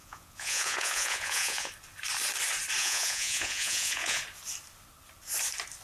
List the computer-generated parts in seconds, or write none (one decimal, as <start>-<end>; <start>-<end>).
0.0-1.7; 2.8-4.2

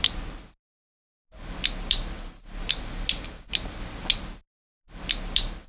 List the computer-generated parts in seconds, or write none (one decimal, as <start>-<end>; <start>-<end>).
none

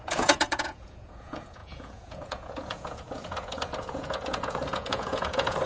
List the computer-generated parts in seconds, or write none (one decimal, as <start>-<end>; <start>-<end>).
0.0-5.7